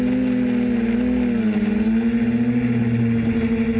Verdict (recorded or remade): recorded